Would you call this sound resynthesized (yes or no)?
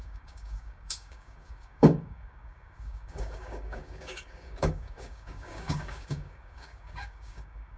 yes